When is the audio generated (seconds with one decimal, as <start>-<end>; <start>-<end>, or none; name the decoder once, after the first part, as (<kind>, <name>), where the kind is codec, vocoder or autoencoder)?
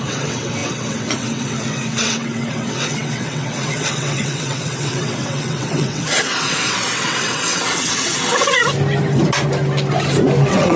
0.0-8.6 (vocoder, WaveNeXt); 10.4-10.8